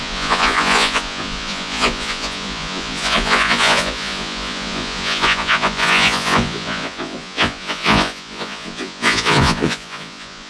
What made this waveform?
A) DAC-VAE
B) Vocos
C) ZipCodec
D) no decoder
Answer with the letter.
B